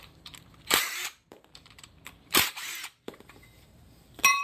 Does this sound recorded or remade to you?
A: remade